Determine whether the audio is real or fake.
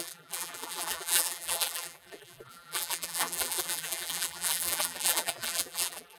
fake